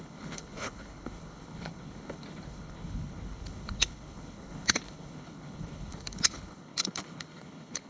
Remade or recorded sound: remade